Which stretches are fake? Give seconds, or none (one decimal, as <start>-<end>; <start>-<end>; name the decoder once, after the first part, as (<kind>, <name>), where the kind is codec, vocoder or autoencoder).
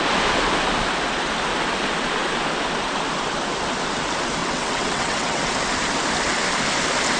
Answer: 4.4-5.4 (vocoder, WaveNeXt)